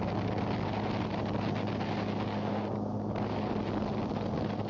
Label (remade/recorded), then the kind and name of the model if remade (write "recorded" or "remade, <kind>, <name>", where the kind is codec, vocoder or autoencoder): recorded